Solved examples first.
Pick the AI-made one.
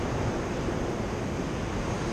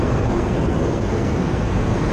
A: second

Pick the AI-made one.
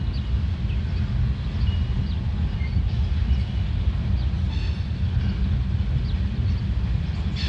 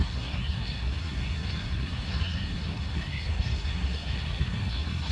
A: second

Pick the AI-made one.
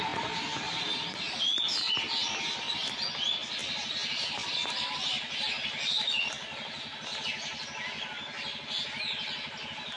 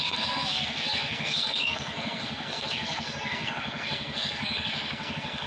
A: second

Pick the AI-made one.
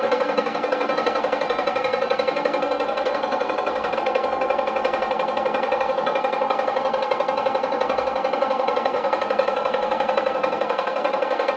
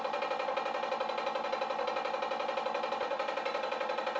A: first